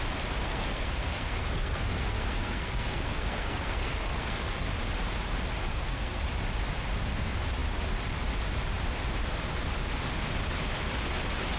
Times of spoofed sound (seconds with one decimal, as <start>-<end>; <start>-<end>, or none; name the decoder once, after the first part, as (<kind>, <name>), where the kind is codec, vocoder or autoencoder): 0.4-4.7 (codec, SNAC); 5.7-6.2